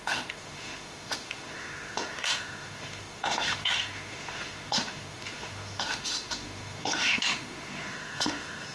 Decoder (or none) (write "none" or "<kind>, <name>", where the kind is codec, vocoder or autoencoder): autoencoder, DAC-VAE